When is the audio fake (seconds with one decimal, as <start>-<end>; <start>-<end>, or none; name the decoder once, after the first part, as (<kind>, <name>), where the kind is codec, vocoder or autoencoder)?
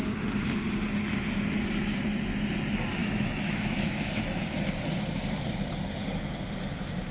3.0-4.6 (autoencoder, DAC-VAE)